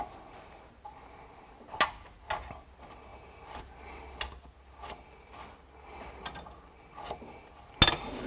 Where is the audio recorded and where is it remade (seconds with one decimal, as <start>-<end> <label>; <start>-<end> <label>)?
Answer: 0.0-8.3 recorded